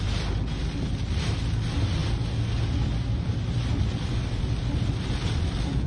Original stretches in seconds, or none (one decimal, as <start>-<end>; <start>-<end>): 0.0-5.9